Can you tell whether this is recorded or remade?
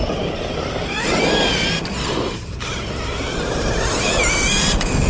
recorded